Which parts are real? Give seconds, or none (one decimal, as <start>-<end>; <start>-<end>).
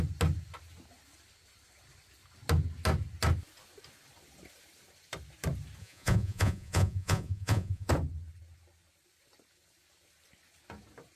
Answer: 0.0-5.8; 7.9-11.2